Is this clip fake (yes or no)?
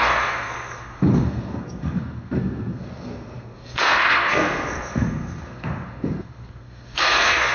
yes